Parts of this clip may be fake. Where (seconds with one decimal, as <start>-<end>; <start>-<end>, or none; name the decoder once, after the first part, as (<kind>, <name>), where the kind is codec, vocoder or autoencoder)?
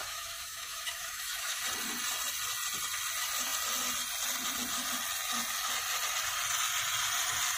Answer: 0.0-1.6 (autoencoder, DAC-VAE)